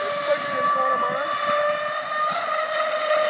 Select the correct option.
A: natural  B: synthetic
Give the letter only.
A